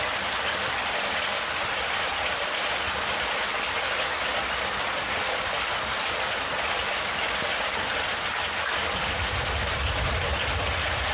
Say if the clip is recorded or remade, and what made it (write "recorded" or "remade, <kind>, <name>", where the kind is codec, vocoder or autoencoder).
recorded